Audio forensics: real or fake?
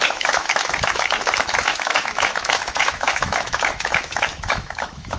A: fake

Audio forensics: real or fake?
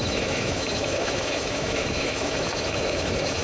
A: fake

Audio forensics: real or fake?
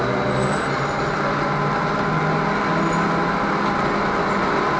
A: real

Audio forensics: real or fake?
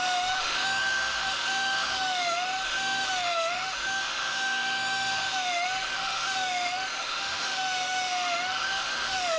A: fake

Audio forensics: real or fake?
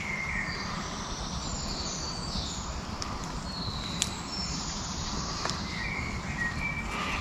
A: real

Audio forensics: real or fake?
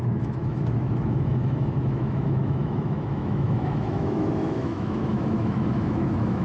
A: fake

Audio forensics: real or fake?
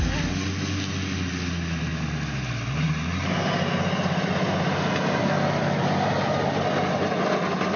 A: real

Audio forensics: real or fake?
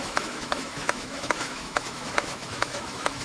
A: fake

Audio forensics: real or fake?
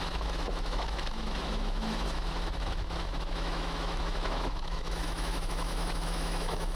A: fake